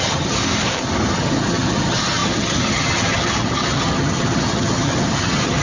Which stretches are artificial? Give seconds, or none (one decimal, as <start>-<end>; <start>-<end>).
0.0-0.4; 1.1-5.6